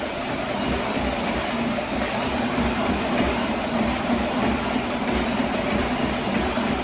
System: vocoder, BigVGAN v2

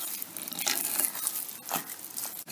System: none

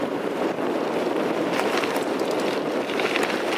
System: none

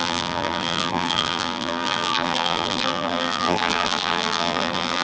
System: vocoder, BigVGAN v2